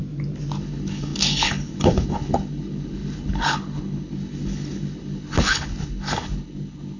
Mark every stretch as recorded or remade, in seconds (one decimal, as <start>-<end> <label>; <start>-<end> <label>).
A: 0.0-0.6 recorded; 0.6-7.0 remade